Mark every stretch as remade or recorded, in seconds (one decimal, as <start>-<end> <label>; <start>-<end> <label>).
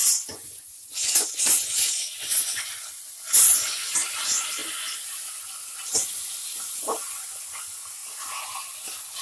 0.0-2.6 remade; 2.6-9.2 recorded